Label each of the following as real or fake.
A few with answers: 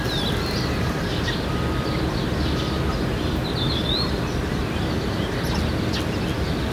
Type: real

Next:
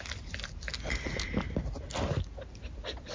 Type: real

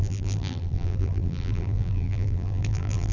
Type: fake